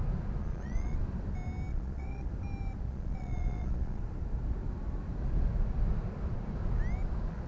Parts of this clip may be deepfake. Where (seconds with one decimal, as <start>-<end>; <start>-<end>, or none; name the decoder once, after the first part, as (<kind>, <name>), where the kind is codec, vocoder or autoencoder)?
0.4-1.0 (vocoder, Vocos); 1.7-2.3; 2.9-4.0